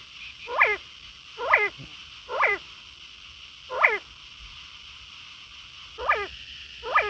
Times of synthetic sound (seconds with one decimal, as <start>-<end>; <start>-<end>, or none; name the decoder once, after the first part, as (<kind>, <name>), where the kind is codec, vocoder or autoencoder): none